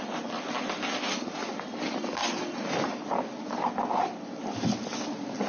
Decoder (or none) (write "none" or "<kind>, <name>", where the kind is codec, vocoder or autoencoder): vocoder, BigVGAN v2